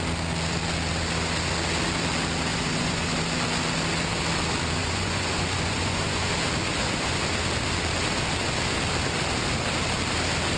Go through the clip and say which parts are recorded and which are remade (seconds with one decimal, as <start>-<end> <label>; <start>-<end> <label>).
0.0-2.5 recorded; 2.5-3.2 remade; 3.2-4.8 recorded; 4.8-6.3 remade; 6.3-6.7 recorded; 6.7-7.2 remade; 7.2-10.6 recorded